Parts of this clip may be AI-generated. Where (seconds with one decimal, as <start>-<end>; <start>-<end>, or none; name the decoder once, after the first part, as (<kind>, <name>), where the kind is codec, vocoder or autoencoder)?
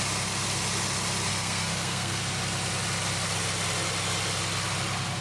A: 1.3-2.2 (codec, SNAC)